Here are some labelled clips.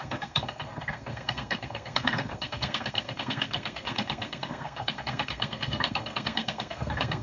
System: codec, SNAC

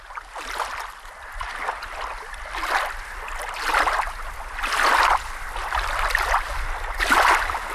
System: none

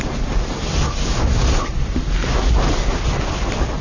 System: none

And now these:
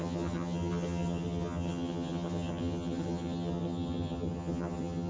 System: vocoder, HiFi-GAN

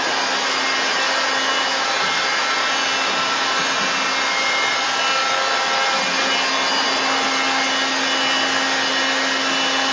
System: none